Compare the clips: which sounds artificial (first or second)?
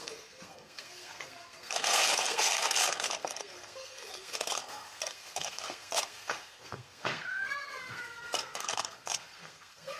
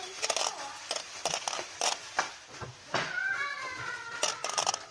first